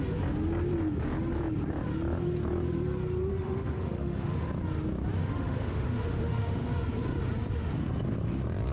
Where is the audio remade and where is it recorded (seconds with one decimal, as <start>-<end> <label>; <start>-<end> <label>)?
0.0-3.3 recorded; 3.3-4.5 remade; 4.5-5.2 recorded; 5.2-6.7 remade; 6.7-8.7 recorded